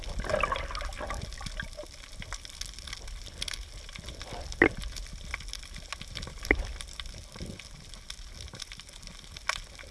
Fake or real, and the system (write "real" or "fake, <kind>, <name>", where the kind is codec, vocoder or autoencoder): fake, vocoder, BigVGAN v2